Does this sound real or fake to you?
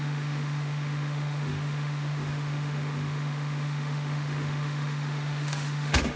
fake